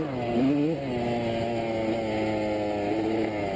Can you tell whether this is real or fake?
real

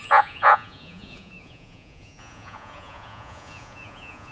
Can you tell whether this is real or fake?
fake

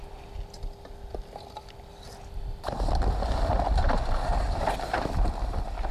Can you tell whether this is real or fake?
real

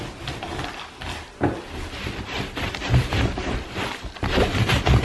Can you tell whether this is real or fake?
real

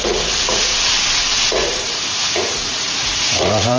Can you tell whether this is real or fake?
fake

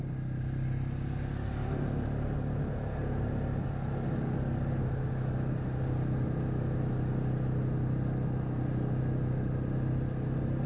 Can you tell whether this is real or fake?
real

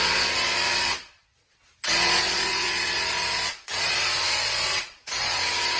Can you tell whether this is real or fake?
fake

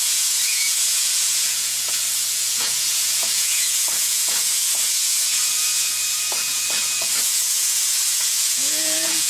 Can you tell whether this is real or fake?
fake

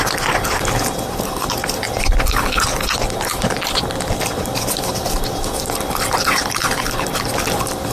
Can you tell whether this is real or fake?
real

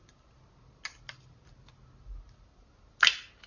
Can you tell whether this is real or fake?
real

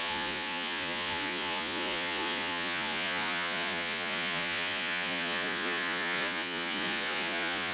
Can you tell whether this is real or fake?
fake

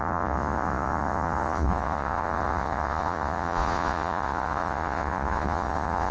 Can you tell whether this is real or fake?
fake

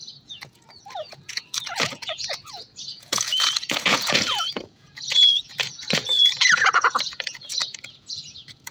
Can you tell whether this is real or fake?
fake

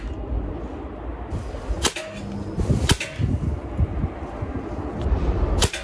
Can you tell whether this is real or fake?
real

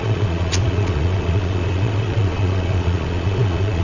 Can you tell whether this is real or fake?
fake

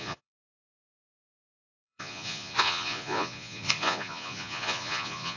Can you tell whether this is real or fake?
fake